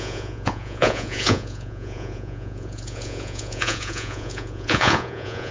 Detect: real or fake fake